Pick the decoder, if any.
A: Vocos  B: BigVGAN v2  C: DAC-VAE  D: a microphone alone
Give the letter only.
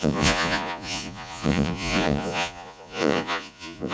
A